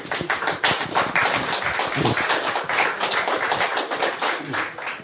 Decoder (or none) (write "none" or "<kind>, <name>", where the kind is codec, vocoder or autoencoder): none